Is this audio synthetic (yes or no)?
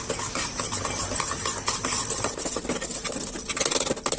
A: no